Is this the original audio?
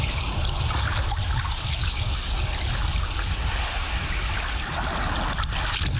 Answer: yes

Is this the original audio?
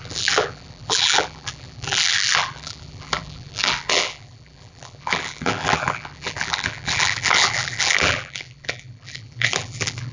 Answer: no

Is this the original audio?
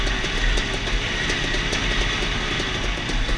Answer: yes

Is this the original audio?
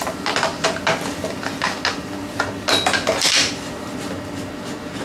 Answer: yes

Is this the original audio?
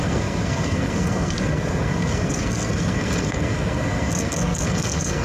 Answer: no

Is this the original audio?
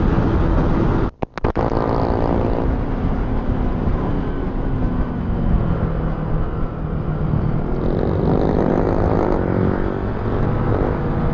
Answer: yes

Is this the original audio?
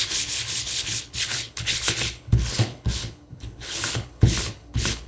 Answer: no